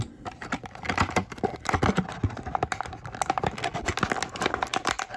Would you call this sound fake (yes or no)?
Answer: no